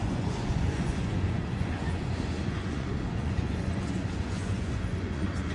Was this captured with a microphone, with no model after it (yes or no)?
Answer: no